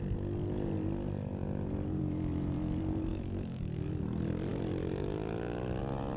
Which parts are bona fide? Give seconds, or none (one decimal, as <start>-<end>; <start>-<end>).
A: 0.0-3.1; 4.0-6.2